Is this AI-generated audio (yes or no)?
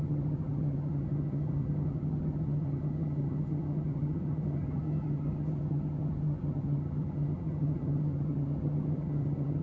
yes